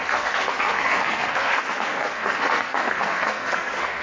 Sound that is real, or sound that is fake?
fake